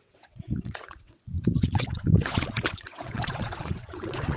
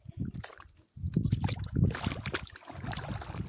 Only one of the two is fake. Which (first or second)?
first